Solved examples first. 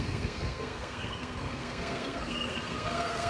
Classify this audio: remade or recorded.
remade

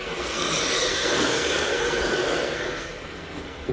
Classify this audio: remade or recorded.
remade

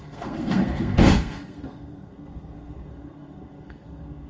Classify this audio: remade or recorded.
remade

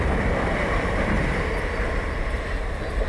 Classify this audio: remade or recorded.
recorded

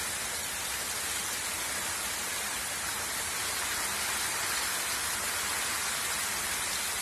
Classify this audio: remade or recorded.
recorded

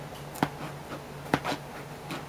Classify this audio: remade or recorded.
recorded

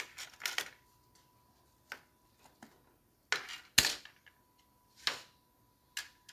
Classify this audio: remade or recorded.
recorded